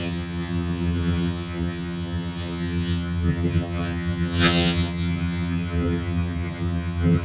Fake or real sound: fake